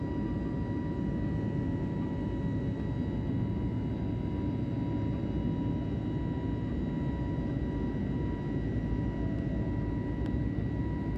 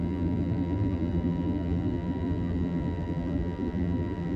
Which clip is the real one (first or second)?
first